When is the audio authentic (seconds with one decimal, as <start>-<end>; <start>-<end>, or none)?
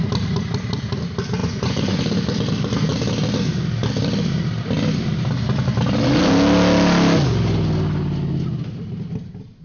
0.0-1.4; 2.0-9.6